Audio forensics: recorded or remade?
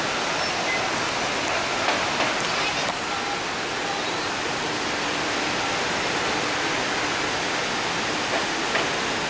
recorded